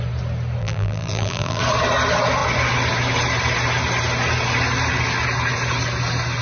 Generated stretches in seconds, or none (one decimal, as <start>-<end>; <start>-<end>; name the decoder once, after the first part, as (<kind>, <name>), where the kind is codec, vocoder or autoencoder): 0.6-1.6 (vocoder, BigVGAN v2)